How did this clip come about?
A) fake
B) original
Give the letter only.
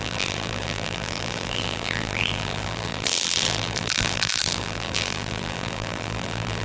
A